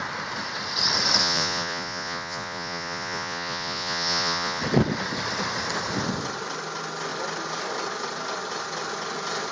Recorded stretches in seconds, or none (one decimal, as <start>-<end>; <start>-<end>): 0.0-1.2; 4.6-9.5